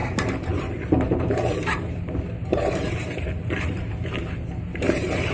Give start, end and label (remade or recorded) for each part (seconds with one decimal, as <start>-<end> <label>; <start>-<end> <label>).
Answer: 0.0-2.0 remade; 2.0-2.5 recorded; 2.5-3.9 remade; 3.9-5.3 recorded